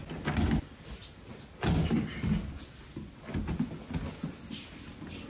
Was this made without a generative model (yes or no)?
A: yes